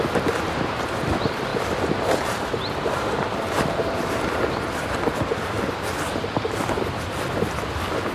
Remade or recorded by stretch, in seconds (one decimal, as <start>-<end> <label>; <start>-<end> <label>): 0.0-8.1 recorded